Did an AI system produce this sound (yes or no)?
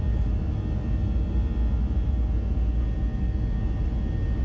no